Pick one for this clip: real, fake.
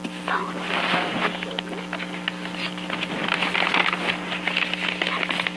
real